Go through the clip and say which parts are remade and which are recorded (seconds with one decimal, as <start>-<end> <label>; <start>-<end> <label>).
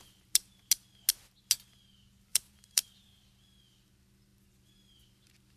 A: 0.0-2.3 recorded; 2.3-3.2 remade; 3.2-5.6 recorded